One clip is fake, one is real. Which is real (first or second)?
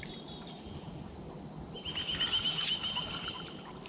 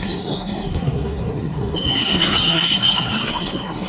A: first